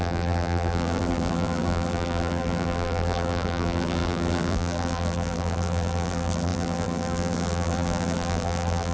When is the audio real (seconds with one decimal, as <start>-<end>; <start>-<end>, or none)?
none